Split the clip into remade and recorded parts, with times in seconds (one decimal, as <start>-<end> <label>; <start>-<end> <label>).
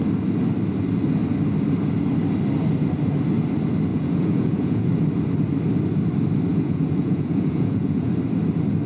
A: 0.0-3.9 recorded; 3.9-4.9 remade; 4.9-6.5 recorded; 6.5-8.1 remade; 8.1-8.9 recorded